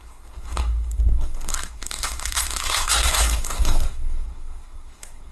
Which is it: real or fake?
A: fake